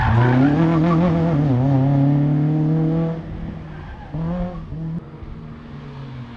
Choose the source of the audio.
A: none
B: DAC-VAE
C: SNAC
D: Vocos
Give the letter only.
A